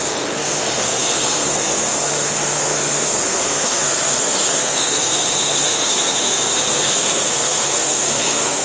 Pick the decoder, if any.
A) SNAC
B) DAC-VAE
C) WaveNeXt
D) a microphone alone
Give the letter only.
A